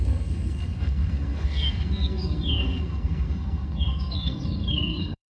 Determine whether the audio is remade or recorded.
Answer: remade